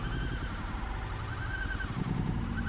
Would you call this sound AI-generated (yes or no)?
no